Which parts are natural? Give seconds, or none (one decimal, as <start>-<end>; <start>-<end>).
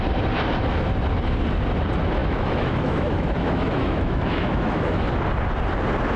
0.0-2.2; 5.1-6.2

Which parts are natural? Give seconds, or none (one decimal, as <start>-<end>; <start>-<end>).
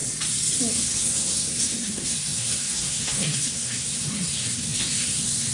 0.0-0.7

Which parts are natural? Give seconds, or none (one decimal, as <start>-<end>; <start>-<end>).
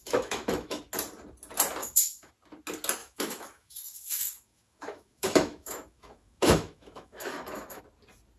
0.8-1.8; 2.3-3.0; 7.8-8.4